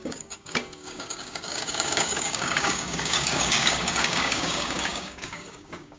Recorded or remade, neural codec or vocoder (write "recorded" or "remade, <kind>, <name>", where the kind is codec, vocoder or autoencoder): remade, codec, DAC